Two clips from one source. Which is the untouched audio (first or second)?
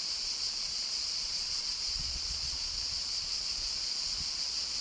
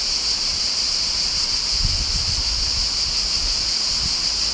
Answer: second